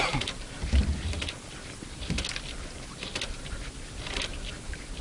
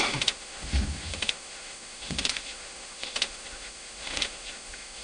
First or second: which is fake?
second